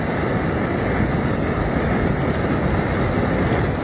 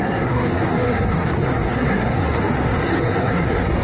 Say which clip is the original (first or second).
first